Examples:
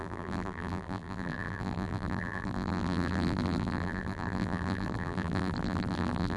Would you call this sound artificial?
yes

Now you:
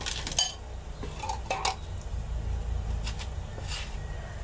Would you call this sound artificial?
no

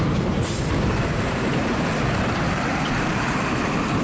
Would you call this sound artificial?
yes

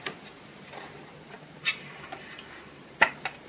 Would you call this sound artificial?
yes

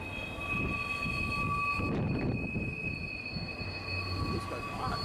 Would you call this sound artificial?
no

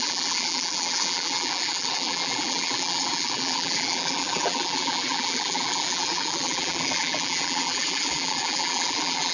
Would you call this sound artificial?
yes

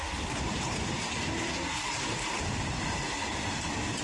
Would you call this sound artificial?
yes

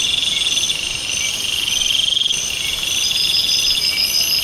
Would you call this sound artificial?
no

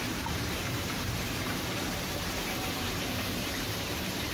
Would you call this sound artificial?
yes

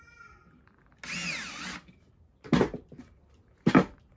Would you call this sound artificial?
no